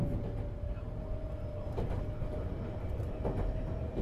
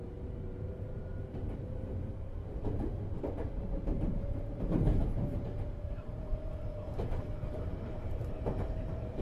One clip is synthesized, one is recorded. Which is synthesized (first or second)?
second